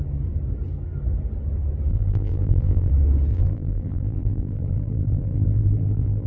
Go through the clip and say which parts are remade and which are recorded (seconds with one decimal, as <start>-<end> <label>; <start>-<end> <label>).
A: 0.0-1.9 recorded; 1.9-2.9 remade; 2.9-3.3 recorded; 3.3-6.3 remade